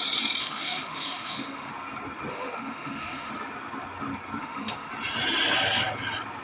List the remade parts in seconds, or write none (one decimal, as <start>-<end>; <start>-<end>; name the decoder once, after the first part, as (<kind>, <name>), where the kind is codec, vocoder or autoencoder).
0.4-1.7 (autoencoder, DAC-VAE); 2.3-3.3; 4.4-4.9